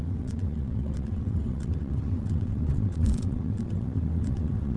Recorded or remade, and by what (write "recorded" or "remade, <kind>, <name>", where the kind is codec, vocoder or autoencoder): remade, vocoder, WaveNeXt